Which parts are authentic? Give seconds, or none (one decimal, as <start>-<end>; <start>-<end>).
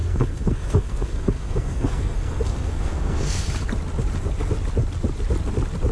3.5-5.9